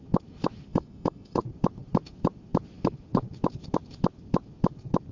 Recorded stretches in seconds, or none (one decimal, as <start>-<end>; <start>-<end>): 0.0-0.7; 1.4-5.1

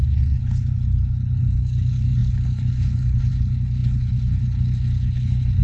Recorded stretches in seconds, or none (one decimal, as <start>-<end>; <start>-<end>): none

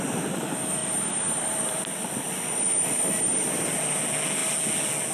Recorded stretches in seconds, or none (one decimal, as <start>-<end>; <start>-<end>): 0.0-0.8; 3.9-5.1

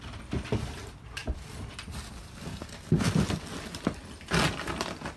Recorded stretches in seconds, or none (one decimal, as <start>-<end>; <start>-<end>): 0.0-5.2

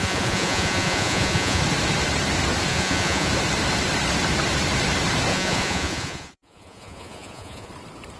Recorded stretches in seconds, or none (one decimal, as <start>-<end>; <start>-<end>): 1.6-2.7; 3.3-5.3; 7.7-8.2

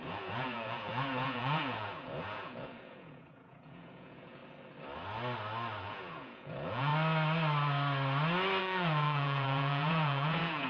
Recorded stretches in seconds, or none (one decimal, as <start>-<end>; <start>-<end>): 4.4-5.8; 6.9-8.6

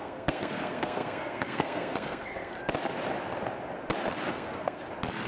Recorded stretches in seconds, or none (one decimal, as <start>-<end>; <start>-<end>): 2.5-4.3; 4.8-5.3